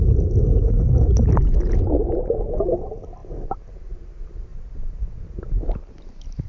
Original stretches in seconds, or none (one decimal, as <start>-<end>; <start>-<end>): 0.0-3.2; 3.7-4.5; 5.9-6.5

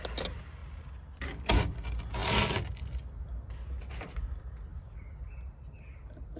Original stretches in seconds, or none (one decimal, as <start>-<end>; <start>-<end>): 0.0-0.6; 1.3-4.7; 5.3-6.4

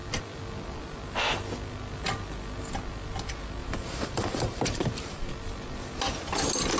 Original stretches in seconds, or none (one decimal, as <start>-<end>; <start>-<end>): 0.0-3.6; 5.3-6.8

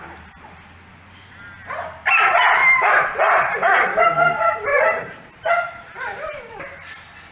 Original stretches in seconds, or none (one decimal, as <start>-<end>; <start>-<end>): 0.0-2.6; 4.0-4.7; 6.5-7.3

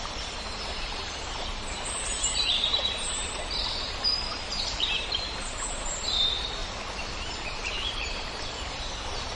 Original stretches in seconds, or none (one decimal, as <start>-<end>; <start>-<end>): 6.6-7.1